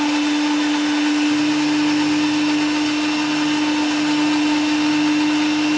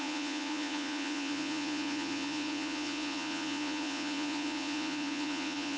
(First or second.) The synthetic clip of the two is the second